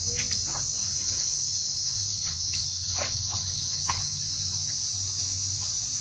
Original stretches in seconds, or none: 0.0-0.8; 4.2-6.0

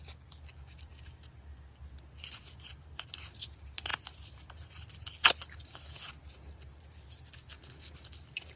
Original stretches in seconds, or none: 0.0-8.6

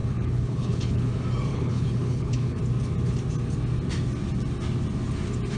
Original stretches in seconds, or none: 1.1-1.5; 2.6-5.6

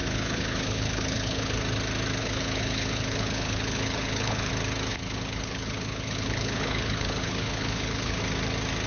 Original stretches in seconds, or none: 1.6-2.2; 4.5-4.9; 8.2-8.9

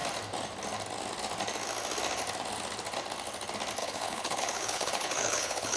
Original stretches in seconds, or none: 0.0-3.8

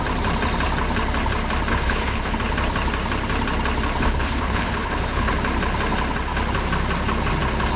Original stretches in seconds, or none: 0.0-1.7; 2.3-4.0; 5.3-7.8

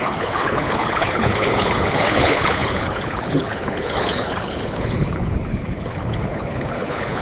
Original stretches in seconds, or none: none